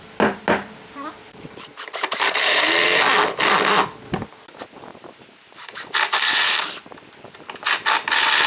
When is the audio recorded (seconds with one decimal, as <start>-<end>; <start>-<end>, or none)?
0.0-1.2; 3.0-4.9; 6.6-8.5